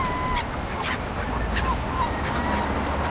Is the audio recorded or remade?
recorded